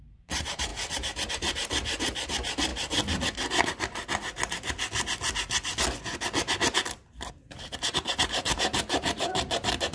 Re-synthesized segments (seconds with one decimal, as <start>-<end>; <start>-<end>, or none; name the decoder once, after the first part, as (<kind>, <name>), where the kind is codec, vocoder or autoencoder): 0.0-0.7 (vocoder, BigVGAN v2); 1.3-2.7; 7.3-9.9